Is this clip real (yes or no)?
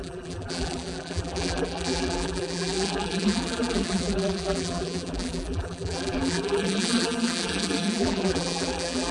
no